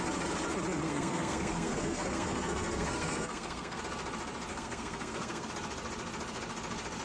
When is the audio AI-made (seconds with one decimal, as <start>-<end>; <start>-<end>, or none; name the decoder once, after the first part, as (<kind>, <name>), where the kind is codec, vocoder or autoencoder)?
0.8-3.8 (codec, SNAC); 4.5-5.5